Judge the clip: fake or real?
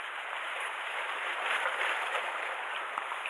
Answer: fake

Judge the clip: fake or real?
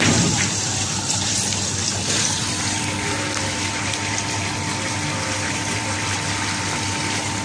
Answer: real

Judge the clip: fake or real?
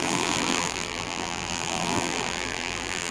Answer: fake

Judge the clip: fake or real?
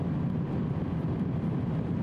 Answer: fake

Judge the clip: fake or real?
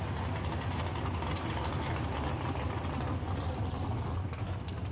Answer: real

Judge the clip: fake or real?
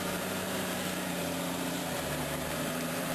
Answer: fake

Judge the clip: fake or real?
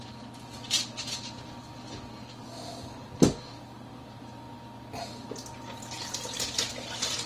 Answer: real